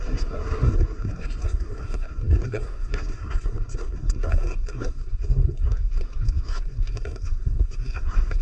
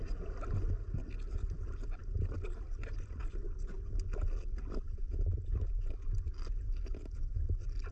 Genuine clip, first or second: second